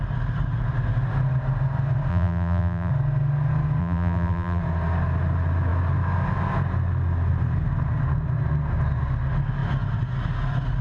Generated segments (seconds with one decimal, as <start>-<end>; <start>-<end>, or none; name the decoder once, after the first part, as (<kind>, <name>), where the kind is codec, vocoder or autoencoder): 2.1-2.9 (vocoder, BigVGAN v2); 3.8-4.6